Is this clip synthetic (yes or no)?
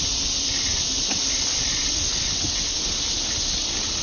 no